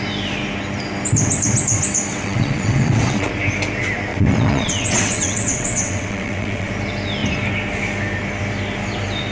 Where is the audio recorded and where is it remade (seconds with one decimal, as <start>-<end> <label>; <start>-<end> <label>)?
0.0-2.1 recorded; 2.1-3.3 remade; 3.3-4.1 recorded; 4.1-6.7 remade; 6.7-9.3 recorded